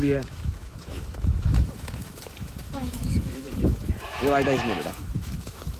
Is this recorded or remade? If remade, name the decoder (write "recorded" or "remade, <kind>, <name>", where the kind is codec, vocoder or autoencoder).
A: remade, autoencoder, DAC-VAE